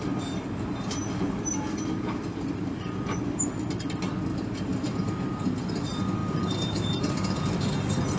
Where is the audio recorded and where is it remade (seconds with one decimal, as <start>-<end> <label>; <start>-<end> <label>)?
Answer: 0.0-4.3 recorded; 4.3-5.7 remade; 5.7-6.2 recorded; 6.2-7.4 remade; 7.4-8.2 recorded